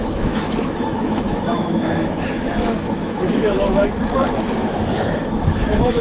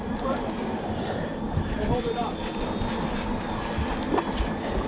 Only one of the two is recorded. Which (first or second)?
second